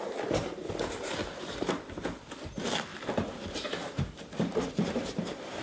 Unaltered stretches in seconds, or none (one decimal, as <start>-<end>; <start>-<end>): 2.9-4.4

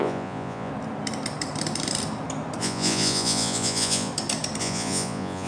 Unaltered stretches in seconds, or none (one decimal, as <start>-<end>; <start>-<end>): 0.7-2.6; 4.1-4.6

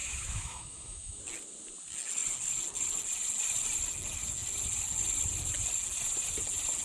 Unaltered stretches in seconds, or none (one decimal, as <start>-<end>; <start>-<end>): 1.2-6.8

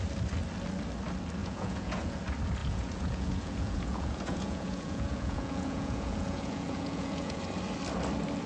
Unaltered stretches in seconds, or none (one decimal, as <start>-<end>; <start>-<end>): 0.0-1.4; 2.2-2.6; 7.4-8.5

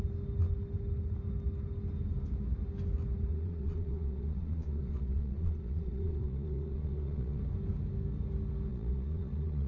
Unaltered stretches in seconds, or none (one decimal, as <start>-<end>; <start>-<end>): 0.0-3.3; 7.4-8.7

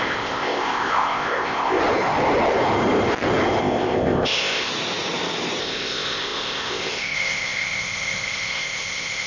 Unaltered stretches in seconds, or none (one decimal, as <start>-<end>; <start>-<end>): 1.8-3.6; 4.7-5.6